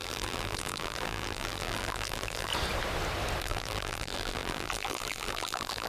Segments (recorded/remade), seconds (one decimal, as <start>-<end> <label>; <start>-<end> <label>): 0.0-2.5 remade; 2.5-3.4 recorded; 3.4-5.9 remade